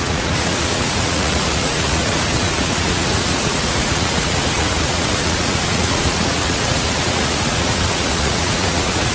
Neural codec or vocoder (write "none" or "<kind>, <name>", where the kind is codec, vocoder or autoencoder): vocoder, Vocos